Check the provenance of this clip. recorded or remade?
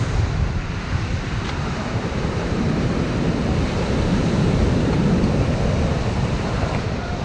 remade